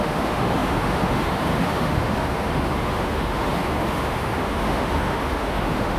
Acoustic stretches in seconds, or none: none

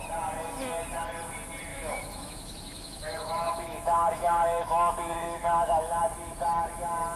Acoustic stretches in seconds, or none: 0.0-1.7; 6.0-7.2

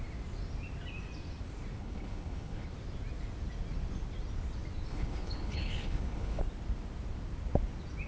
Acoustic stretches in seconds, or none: 0.0-1.8; 2.7-4.9; 6.4-8.1

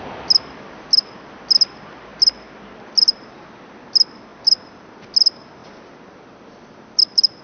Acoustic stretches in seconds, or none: 0.0-7.4

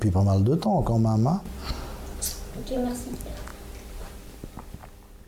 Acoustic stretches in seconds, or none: 0.0-5.3

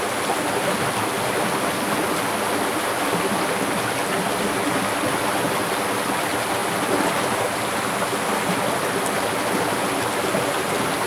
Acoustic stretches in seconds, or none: 0.0-11.1